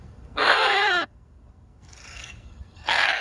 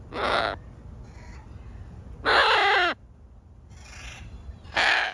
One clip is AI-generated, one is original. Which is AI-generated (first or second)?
first